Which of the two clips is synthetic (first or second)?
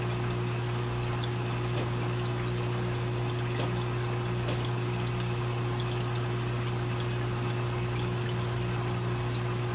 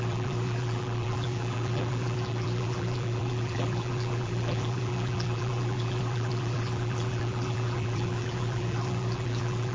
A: second